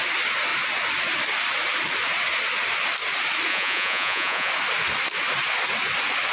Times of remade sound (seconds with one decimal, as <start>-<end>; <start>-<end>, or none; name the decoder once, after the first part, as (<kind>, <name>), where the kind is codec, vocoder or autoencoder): 3.5-4.5 (vocoder, Vocos)